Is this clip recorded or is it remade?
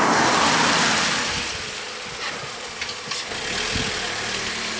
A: recorded